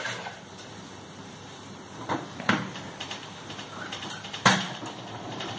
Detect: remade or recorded remade